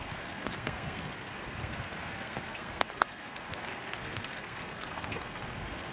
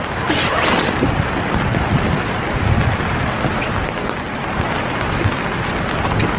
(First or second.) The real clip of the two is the second